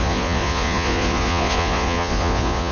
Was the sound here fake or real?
fake